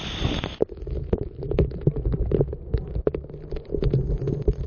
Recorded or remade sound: recorded